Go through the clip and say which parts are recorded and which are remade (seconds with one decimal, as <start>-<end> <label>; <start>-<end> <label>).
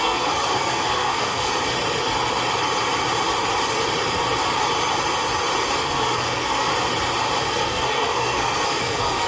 0.0-1.5 remade; 1.5-5.8 recorded; 5.8-6.7 remade; 6.7-7.4 recorded; 7.4-9.3 remade